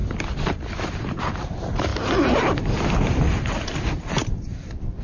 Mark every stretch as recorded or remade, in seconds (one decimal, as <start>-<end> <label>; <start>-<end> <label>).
0.0-5.0 recorded